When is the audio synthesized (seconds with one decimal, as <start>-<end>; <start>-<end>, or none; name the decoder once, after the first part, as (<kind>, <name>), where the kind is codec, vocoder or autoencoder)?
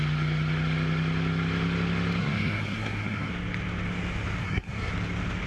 2.2-3.3 (codec, SNAC); 4.4-4.9